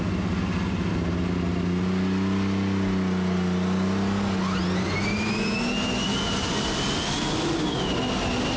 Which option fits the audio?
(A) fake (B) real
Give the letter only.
B